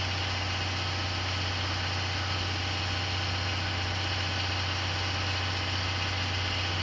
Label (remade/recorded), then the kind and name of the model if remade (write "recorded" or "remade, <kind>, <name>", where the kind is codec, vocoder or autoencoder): recorded